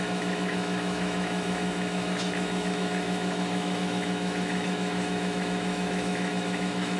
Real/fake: fake